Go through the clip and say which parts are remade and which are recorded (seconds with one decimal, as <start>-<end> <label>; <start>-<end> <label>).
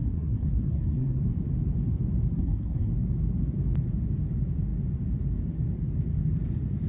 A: 0.0-1.2 remade; 1.2-2.3 recorded; 2.3-2.9 remade; 2.9-6.9 recorded